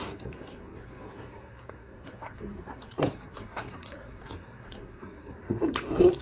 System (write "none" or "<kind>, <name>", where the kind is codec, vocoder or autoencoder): codec, SNAC